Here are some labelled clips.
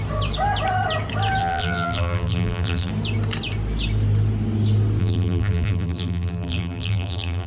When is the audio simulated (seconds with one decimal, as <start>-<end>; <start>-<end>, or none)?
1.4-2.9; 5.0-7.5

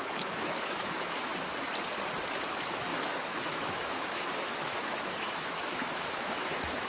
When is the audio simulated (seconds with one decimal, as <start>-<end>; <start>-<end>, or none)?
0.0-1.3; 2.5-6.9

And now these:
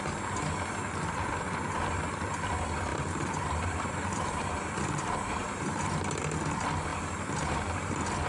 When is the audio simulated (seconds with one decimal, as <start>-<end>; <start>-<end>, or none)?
2.9-6.0; 6.9-7.9